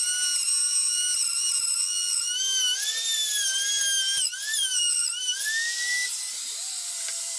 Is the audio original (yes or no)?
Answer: yes